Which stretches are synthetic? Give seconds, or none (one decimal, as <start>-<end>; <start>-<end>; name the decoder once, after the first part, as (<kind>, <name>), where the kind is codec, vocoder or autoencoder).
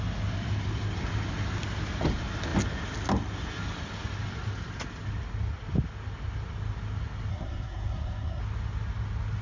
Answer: 7.3-8.4 (codec, SNAC)